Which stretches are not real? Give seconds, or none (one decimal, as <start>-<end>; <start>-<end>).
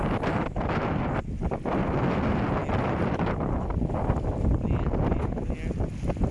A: none